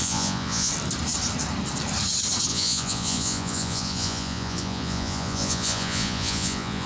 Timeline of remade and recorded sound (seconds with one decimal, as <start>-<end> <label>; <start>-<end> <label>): 0.0-0.7 remade; 0.7-2.5 recorded; 2.5-6.9 remade